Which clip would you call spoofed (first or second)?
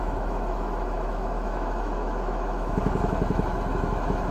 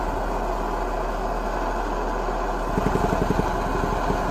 first